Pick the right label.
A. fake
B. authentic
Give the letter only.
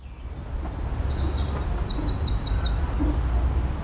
B